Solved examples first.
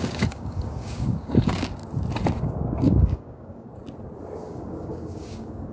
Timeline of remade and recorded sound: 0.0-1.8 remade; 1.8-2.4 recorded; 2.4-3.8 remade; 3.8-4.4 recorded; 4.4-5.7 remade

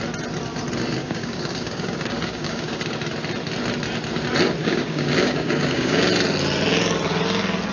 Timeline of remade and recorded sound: 0.0-1.0 recorded; 1.0-2.9 remade; 2.9-4.6 recorded; 4.6-6.0 remade; 6.0-7.7 recorded

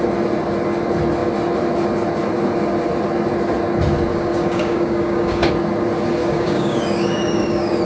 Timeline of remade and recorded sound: 0.0-4.1 recorded; 4.1-5.5 remade; 5.5-6.2 recorded; 6.2-7.8 remade

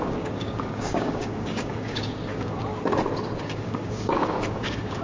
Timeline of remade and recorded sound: 0.0-2.7 remade; 2.7-3.4 recorded; 3.4-5.0 remade

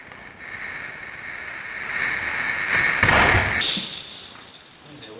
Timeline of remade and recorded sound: 0.0-5.2 recorded

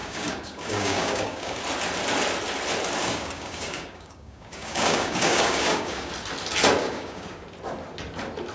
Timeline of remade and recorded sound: 0.0-1.6 remade; 1.6-3.0 recorded; 3.0-6.1 remade; 6.1-6.8 recorded; 6.8-7.4 remade; 7.4-8.5 recorded

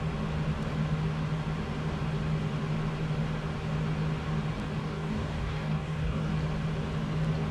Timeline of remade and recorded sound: 0.0-4.8 recorded; 4.8-6.3 remade; 6.3-7.5 recorded